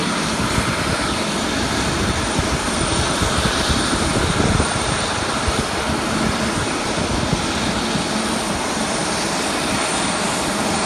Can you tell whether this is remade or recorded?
remade